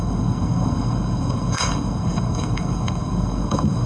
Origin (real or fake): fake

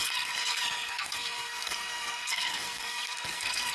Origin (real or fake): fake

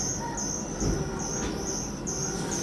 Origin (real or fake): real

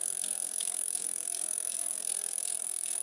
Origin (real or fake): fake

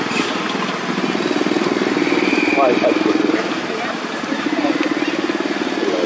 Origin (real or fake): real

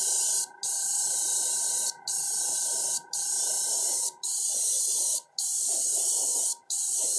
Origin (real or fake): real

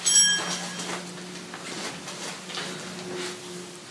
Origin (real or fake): real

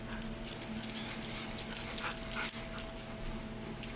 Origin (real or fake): real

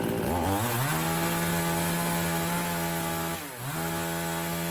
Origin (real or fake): real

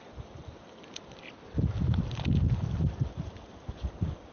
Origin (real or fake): real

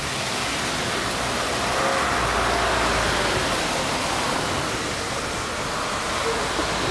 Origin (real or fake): real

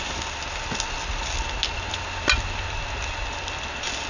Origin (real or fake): real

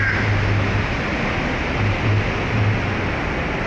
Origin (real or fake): real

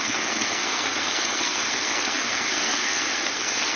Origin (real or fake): fake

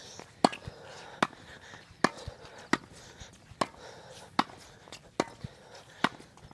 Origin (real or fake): real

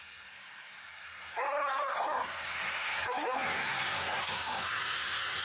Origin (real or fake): fake